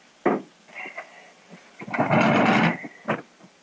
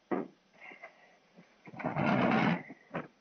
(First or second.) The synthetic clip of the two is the second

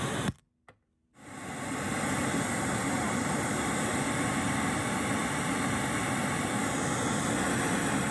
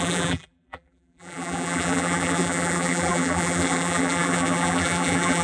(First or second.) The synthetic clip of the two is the second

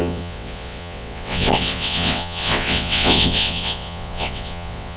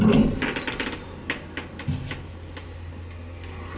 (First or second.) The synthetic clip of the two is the first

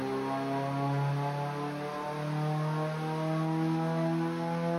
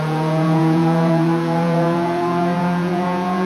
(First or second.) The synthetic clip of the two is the second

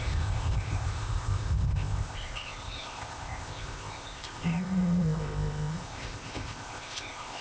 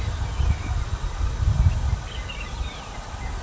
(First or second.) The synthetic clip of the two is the first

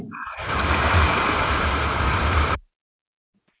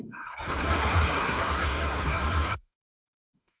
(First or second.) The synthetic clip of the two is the second